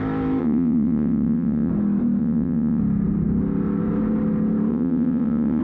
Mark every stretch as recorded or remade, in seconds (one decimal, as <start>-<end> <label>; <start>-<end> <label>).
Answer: 0.0-0.4 recorded; 0.4-1.7 remade; 1.7-2.2 recorded; 2.2-2.8 remade; 2.8-4.7 recorded; 4.7-5.6 remade